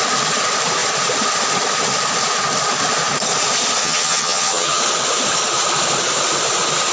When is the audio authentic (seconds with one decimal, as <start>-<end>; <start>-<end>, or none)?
0.0-3.8; 4.8-6.9